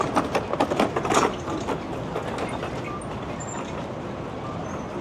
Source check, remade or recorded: recorded